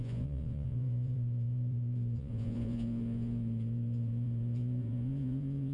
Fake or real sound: fake